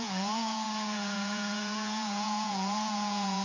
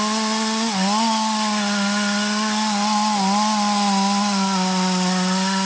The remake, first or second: first